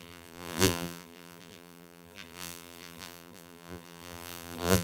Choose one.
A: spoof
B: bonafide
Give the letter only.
A